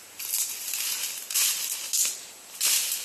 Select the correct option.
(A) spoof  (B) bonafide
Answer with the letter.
B